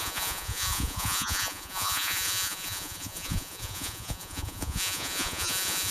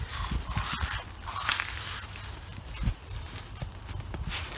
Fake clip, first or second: first